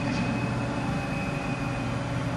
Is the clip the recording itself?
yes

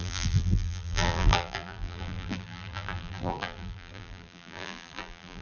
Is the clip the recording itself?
no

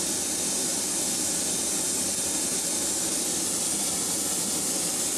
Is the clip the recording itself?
yes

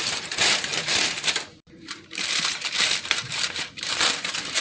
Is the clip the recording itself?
no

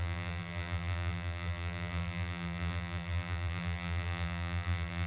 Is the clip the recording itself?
no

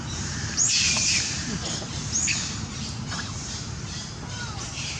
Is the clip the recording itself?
no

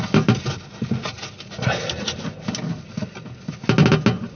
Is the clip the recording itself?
yes